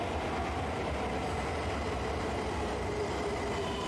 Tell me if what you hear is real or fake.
real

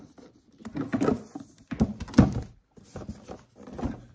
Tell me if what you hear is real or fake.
real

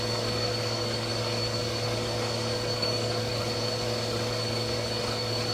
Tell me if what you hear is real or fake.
fake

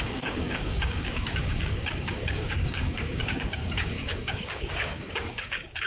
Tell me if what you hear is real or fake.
fake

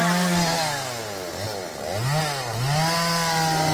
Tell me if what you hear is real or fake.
real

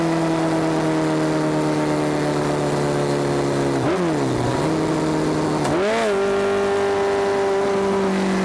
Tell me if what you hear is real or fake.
real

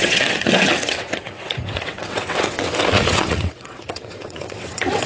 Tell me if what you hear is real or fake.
fake